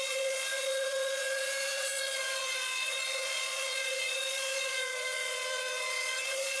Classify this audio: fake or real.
fake